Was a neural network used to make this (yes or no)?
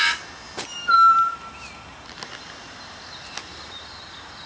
no